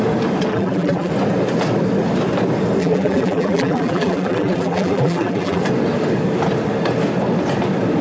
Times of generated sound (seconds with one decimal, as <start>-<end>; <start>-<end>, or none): 0.5-1.1; 2.8-5.6